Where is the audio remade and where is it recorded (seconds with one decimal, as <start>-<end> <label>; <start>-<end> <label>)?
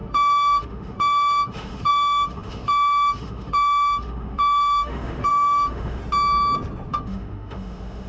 0.0-6.0 remade; 6.0-6.9 recorded; 6.9-8.1 remade